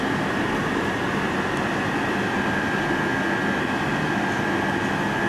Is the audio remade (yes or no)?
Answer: no